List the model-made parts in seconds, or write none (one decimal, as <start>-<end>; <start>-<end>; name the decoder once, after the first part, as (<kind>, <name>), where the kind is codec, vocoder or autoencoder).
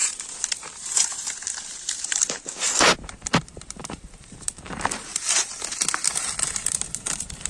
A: 0.0-5.1 (vocoder, BigVGAN v2); 6.7-7.5